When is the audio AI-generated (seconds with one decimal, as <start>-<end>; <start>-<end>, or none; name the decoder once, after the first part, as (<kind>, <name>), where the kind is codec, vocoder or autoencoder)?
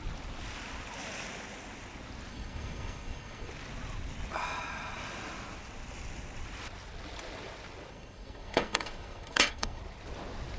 2.3-3.5 (codec, SNAC); 7.9-9.8